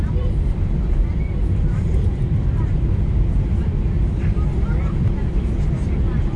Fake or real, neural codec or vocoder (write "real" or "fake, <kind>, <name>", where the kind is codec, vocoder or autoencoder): fake, vocoder, BigVGAN v2